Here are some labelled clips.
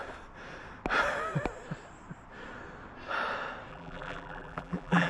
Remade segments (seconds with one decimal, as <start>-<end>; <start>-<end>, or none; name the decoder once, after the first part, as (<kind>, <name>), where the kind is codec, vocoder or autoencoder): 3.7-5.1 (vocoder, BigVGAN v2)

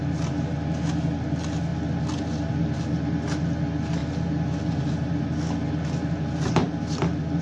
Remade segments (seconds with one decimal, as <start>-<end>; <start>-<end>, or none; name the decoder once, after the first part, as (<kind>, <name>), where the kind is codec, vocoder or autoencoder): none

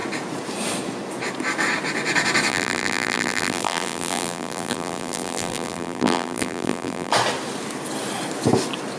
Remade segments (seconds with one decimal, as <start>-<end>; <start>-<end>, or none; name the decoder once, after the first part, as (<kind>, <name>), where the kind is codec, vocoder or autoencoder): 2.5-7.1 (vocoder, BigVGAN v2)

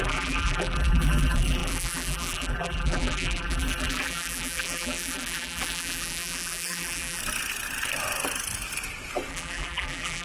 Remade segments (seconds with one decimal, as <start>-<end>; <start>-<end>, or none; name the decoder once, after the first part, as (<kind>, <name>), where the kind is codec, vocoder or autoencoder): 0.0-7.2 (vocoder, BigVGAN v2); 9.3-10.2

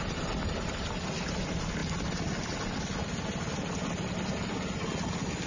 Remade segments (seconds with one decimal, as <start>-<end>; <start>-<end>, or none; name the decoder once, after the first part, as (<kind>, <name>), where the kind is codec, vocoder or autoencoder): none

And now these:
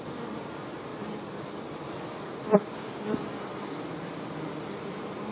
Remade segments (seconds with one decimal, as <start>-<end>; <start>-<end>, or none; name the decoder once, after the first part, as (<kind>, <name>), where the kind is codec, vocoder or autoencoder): 3.5-4.3 (vocoder, BigVGAN v2)